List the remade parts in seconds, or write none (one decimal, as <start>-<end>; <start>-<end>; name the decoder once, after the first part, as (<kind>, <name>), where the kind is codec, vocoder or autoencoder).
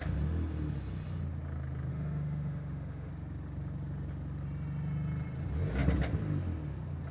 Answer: 1.9-3.1 (autoencoder, DAC-VAE)